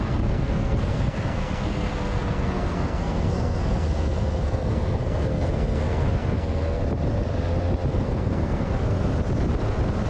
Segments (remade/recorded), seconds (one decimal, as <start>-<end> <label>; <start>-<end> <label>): 0.0-6.8 remade; 6.8-7.9 recorded; 7.9-9.1 remade; 9.1-10.1 recorded